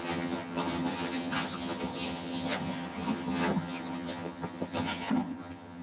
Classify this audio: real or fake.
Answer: fake